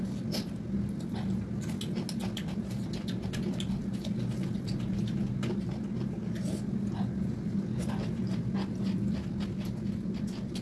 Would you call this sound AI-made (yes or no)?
no